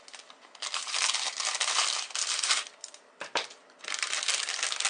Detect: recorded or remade recorded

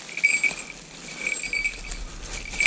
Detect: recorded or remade recorded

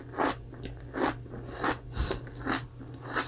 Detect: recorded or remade recorded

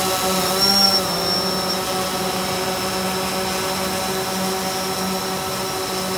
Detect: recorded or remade recorded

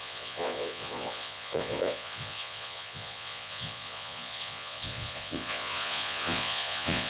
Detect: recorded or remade remade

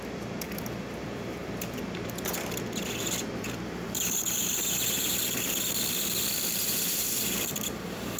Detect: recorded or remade remade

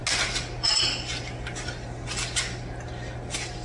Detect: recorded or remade recorded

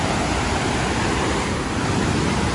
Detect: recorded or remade recorded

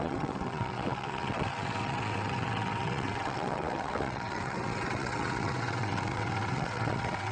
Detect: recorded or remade remade